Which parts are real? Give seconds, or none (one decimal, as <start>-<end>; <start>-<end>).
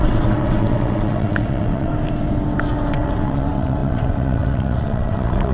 1.9-2.9